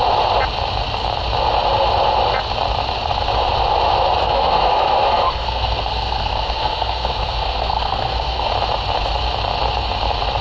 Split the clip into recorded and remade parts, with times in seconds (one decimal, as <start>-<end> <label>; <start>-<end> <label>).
0.0-4.2 recorded; 4.2-8.5 remade; 8.5-10.4 recorded

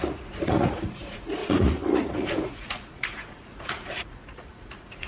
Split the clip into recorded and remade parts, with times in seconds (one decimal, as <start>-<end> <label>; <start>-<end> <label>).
0.0-5.1 remade

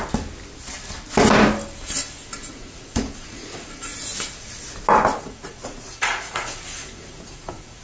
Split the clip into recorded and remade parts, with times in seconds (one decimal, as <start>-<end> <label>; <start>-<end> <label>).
0.0-2.5 recorded; 2.5-3.9 remade; 3.9-5.2 recorded; 5.2-7.8 remade